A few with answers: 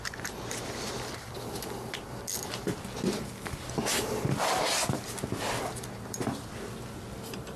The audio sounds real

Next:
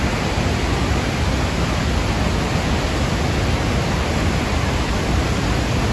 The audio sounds real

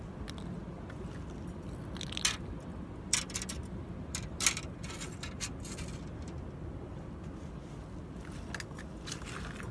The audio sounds real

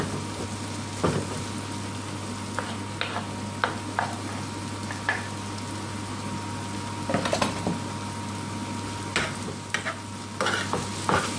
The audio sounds real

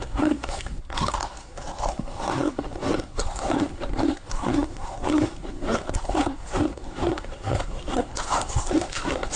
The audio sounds fake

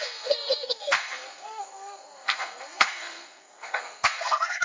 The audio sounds fake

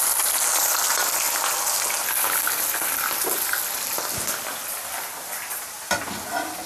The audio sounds real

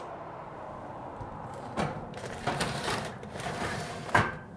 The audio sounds fake